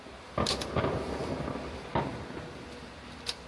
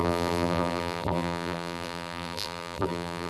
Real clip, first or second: first